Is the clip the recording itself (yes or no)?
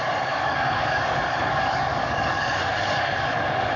no